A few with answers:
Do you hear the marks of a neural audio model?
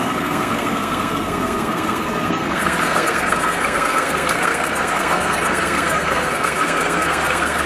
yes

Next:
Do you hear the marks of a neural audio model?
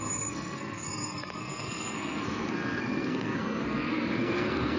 yes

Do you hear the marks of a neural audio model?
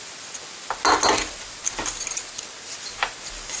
no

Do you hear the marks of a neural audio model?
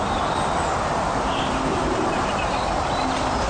no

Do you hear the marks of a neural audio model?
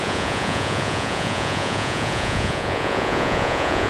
yes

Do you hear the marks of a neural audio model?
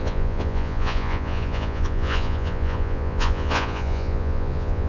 yes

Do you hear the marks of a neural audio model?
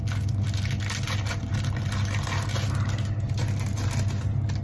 no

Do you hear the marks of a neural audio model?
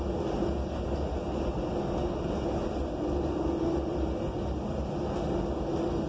no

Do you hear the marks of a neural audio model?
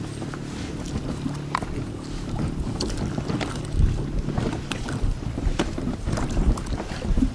no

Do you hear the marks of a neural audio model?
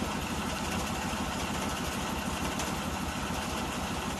no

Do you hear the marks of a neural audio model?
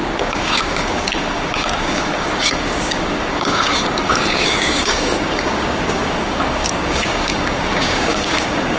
yes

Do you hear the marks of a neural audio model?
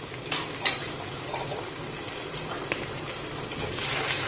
no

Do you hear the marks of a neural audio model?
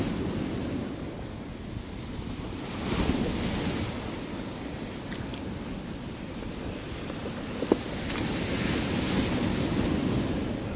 no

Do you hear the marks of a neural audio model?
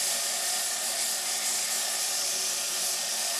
yes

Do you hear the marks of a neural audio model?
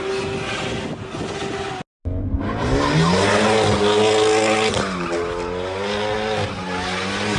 no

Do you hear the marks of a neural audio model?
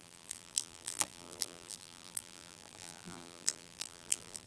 yes